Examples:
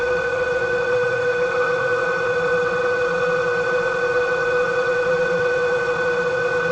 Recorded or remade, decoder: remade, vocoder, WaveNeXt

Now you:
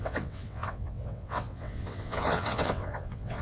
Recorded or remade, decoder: remade, vocoder, WaveNeXt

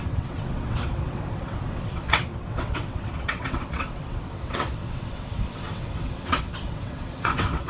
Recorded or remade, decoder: remade, vocoder, WaveNeXt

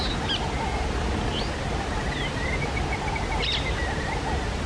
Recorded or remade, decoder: recorded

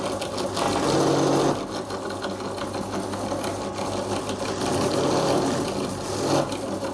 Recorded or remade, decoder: recorded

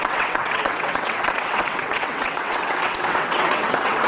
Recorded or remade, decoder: remade, vocoder, WaveNeXt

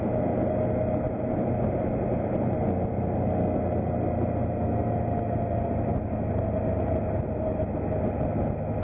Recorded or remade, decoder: recorded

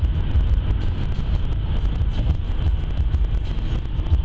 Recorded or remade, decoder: recorded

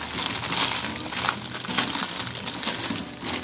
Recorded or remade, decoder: recorded